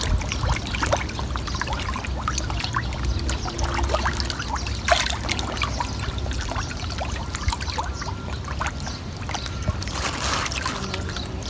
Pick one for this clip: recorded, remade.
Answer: recorded